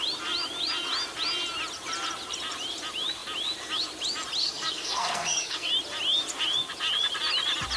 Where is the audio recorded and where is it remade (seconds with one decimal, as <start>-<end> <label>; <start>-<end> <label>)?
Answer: 0.0-4.4 recorded; 4.4-5.7 remade; 5.7-7.8 recorded